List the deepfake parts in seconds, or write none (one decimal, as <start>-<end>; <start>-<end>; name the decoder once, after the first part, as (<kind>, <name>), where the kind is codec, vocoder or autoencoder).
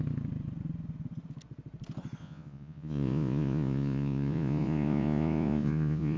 2.2-6.2 (vocoder, Vocos)